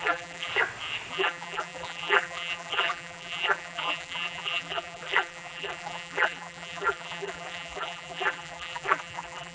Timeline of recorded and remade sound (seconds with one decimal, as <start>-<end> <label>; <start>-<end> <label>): 0.0-0.5 remade; 0.5-1.1 recorded; 1.1-9.5 remade